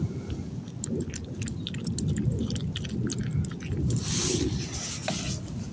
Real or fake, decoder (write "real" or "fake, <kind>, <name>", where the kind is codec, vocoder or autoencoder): real